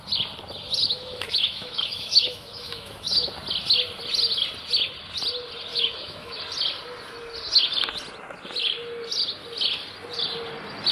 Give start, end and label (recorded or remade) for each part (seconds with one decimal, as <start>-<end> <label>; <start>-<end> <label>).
0.0-0.8 recorded; 0.8-3.3 remade; 3.3-5.7 recorded; 5.7-6.4 remade; 6.4-10.9 recorded